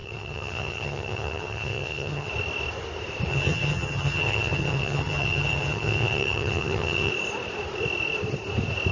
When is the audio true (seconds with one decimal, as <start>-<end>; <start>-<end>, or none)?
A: 2.3-3.3; 7.1-8.9